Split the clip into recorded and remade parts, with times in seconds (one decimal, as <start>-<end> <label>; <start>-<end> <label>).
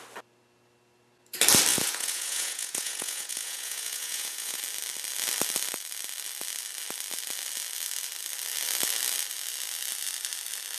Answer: 0.0-1.7 recorded; 1.7-4.6 remade; 4.6-10.8 recorded